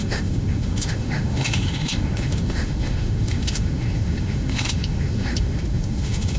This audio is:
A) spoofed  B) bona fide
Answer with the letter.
A